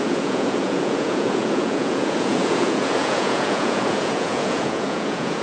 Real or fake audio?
fake